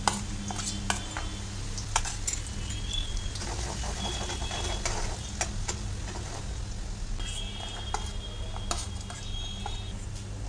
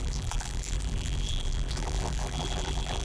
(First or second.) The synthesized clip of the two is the second